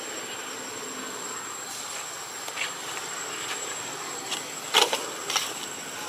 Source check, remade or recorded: recorded